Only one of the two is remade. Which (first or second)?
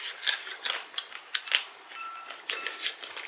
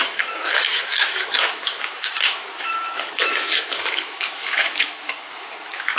second